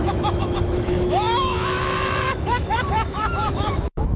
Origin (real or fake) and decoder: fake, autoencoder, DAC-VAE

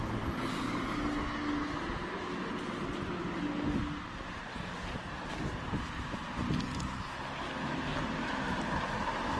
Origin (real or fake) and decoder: real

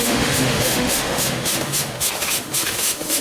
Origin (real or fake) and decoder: fake, autoencoder, DAC-VAE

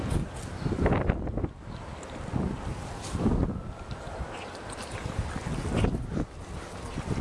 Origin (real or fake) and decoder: real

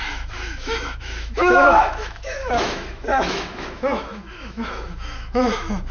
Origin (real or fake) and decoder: fake, autoencoder, DAC-VAE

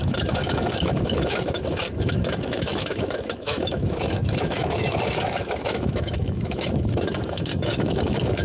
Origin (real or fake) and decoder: fake, autoencoder, DAC-VAE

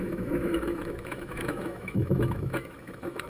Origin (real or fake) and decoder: fake, autoencoder, DAC-VAE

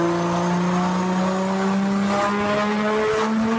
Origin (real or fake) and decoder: real